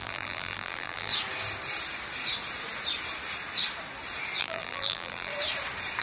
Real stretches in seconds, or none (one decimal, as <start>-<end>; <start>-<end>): 1.1-4.4; 5.3-6.0